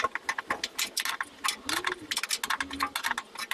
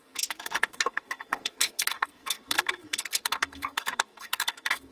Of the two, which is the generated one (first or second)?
second